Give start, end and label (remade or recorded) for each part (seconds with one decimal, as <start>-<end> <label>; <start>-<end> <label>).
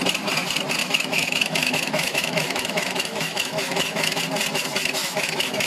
0.0-0.8 recorded; 0.8-4.2 remade; 4.2-5.0 recorded; 5.0-5.7 remade